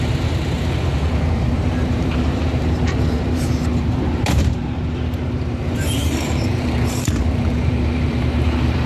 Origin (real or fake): fake